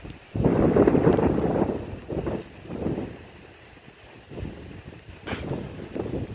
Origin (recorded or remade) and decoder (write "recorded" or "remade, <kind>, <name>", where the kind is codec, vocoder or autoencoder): recorded